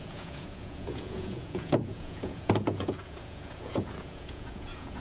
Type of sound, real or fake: fake